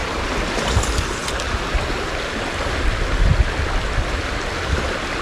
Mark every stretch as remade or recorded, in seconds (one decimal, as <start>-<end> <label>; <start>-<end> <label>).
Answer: 0.0-5.2 recorded